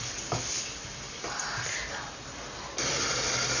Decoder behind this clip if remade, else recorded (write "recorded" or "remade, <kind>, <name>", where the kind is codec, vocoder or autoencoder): recorded